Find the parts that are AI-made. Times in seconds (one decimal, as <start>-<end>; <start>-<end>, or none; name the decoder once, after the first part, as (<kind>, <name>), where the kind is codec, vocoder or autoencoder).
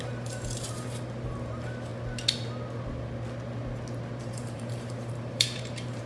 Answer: 0.0-1.9 (vocoder, BigVGAN v2); 4.2-6.1